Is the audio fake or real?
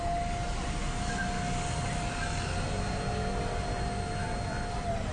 real